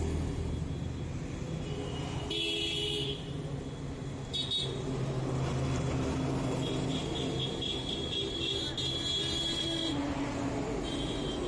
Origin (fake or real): real